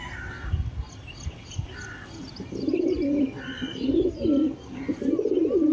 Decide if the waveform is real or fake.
real